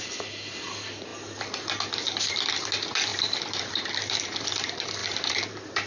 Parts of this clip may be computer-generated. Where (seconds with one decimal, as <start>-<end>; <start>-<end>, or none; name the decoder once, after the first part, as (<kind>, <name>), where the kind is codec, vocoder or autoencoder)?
3.1-3.7 (vocoder, BigVGAN v2); 5.0-5.9